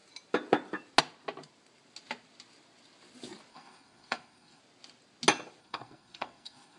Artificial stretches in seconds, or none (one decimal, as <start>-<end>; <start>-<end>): 3.5-4.6; 5.6-6.8